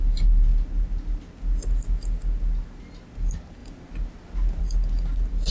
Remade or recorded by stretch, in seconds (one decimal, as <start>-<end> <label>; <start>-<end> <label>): 0.0-5.5 recorded